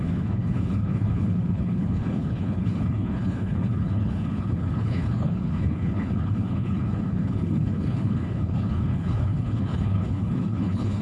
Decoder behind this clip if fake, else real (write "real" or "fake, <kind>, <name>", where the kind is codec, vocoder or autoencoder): fake, codec, HILCodec